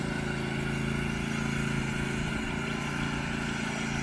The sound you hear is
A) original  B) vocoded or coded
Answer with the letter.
A